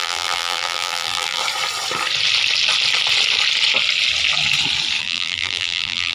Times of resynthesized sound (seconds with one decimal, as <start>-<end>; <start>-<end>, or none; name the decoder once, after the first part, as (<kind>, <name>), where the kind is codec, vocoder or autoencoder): 0.0-1.4 (vocoder, BigVGAN v2); 5.0-6.1